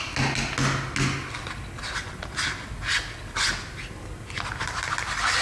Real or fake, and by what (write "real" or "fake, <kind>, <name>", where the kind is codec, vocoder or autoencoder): real